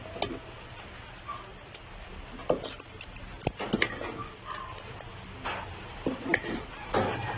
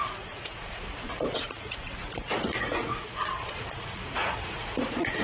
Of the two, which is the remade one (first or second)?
second